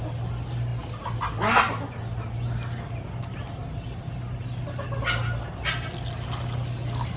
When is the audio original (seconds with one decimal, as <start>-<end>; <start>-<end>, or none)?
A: 0.0-7.2